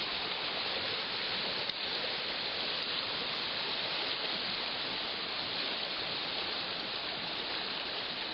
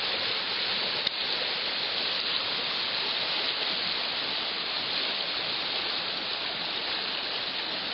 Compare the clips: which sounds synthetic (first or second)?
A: first